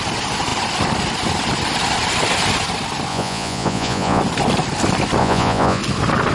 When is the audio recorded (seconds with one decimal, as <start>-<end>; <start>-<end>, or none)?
0.0-3.1; 4.2-5.2; 5.8-6.3

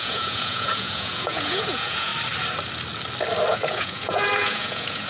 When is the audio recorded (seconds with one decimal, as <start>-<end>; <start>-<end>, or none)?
2.1-3.5